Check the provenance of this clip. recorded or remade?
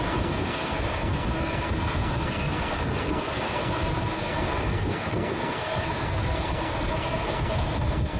remade